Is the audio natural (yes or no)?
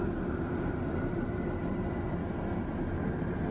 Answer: yes